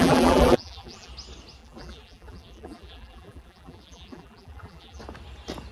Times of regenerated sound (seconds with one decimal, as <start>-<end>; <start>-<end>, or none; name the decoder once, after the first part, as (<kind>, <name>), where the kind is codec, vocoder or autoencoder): 0.0-1.1 (vocoder, BigVGAN v2); 1.6-5.0